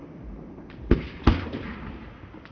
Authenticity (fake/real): real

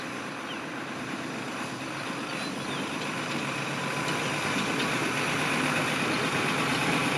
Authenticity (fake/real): real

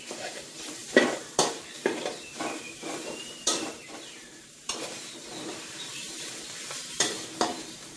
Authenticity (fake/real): fake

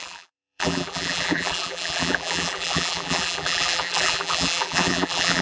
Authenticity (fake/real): fake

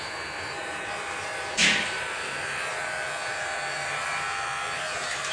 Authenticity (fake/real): fake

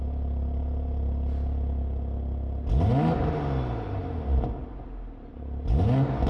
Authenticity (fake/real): real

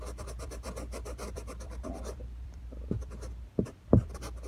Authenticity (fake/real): fake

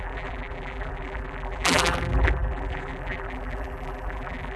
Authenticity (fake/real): fake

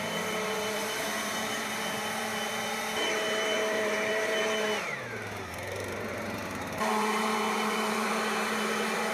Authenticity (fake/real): fake